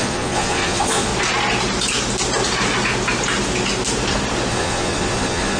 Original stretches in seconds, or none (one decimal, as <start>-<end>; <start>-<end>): 1.1-4.5